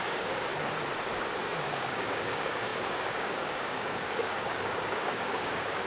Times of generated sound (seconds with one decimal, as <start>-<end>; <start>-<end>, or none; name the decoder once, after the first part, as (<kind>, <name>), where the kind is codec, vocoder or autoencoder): 0.0-0.5 (codec, DAC); 1.3-5.9